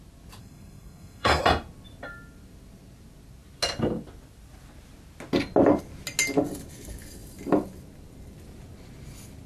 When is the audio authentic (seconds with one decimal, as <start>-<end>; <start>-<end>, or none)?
0.0-0.4; 1.4-9.5